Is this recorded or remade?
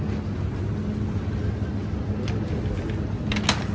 recorded